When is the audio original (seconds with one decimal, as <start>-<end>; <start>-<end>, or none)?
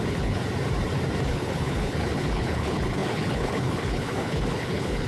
0.4-1.3